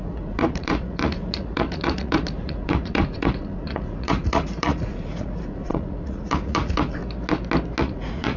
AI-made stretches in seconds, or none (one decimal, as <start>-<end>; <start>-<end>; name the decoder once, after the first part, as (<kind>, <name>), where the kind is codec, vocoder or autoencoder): 0.0-7.0 (vocoder, Vocos); 7.8-8.4